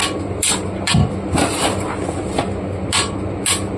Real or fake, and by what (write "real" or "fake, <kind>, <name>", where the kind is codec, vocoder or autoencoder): real